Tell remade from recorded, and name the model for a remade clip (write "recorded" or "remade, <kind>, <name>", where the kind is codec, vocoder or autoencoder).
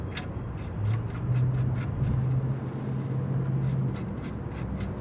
recorded